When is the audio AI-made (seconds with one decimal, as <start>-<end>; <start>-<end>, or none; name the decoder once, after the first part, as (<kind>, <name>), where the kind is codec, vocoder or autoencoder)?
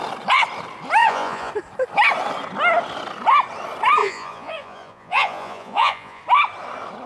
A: 1.0-1.5 (vocoder, Vocos); 4.0-6.2